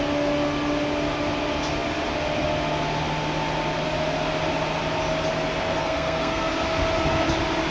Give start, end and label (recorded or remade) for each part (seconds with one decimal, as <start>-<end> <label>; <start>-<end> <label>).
0.0-5.8 recorded; 5.8-6.5 remade; 6.5-7.7 recorded